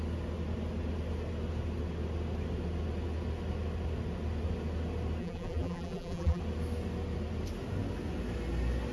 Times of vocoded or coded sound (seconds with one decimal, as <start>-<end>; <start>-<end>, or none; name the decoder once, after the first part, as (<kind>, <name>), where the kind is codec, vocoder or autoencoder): 5.2-6.4 (vocoder, BigVGAN v2)